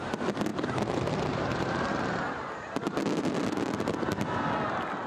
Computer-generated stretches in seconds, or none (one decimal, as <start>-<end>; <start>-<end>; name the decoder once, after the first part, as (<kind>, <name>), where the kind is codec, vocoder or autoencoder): 0.5-2.3 (vocoder, BigVGAN v2)